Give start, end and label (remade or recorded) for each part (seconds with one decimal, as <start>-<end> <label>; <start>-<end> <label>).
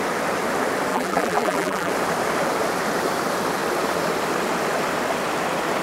0.0-0.9 recorded; 0.9-1.9 remade; 1.9-5.8 recorded